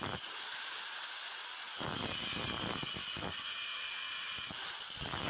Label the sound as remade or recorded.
recorded